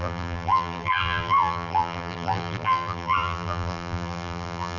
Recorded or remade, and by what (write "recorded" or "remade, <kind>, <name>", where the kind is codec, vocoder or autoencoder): remade, vocoder, BigVGAN v2